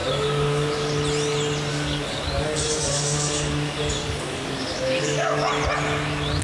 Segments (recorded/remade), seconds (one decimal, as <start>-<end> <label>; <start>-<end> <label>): 0.0-0.9 remade; 0.9-1.7 recorded; 1.7-5.5 remade; 5.5-6.4 recorded